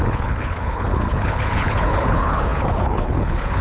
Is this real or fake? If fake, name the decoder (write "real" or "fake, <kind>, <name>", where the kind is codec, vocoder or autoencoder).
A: fake, codec, HILCodec